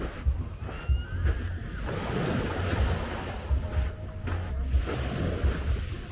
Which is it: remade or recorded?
recorded